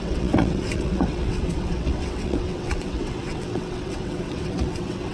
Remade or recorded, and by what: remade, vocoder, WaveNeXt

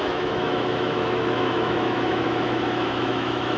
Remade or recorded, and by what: remade, autoencoder, DAC-VAE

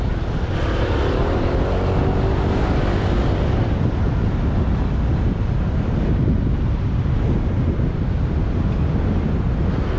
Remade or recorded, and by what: recorded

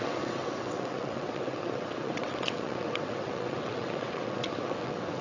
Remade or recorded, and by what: remade, vocoder, WaveNeXt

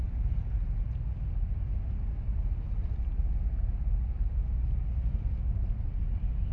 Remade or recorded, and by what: recorded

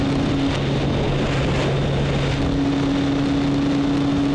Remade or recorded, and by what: recorded